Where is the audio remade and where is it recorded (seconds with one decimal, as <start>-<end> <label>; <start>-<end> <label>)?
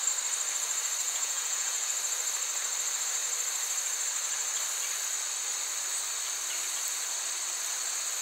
0.0-1.0 recorded; 1.0-1.9 remade; 1.9-8.2 recorded